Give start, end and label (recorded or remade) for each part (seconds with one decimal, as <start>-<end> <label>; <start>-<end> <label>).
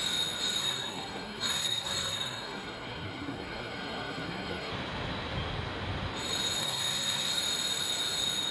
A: 0.0-0.6 recorded; 0.6-4.7 remade; 4.7-6.6 recorded; 6.6-7.3 remade; 7.3-8.5 recorded